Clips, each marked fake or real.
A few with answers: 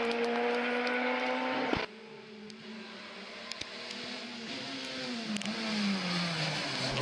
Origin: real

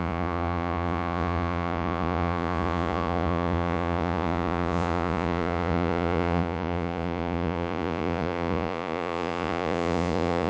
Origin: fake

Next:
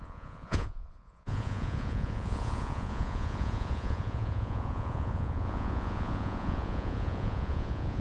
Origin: fake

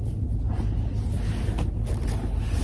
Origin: real